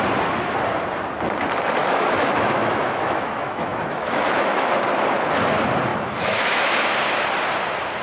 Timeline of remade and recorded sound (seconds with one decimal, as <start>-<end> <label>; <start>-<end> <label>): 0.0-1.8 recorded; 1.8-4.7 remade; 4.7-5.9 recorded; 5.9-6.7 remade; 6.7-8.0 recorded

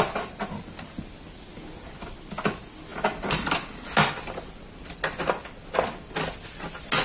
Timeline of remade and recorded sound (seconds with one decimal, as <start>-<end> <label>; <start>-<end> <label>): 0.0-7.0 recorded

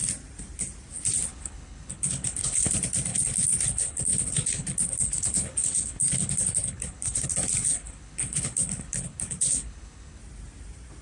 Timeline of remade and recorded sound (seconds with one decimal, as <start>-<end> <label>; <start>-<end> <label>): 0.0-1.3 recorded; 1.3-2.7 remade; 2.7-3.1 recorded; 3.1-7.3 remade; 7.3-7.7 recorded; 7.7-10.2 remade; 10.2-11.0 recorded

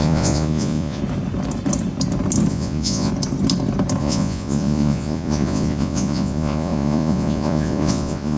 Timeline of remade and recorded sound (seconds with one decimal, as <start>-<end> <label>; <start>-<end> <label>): 0.0-1.0 remade; 1.0-2.5 recorded; 2.5-3.1 remade; 3.1-4.0 recorded; 4.0-8.4 remade

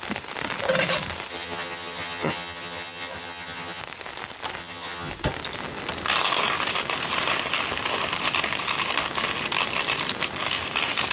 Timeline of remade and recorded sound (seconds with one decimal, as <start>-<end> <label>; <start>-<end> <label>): 0.0-1.3 recorded; 1.3-3.8 remade; 3.8-4.6 recorded; 4.6-5.1 remade; 5.1-11.1 recorded